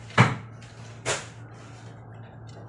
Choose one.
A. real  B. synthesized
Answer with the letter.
A